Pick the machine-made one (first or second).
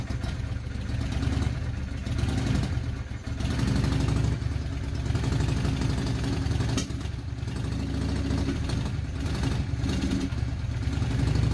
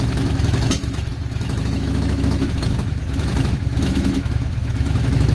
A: second